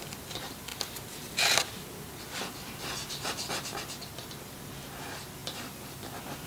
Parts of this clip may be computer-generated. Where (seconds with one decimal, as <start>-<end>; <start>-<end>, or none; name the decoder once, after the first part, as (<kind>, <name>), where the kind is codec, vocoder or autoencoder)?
none